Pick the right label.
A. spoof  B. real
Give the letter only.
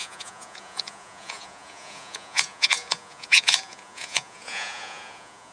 A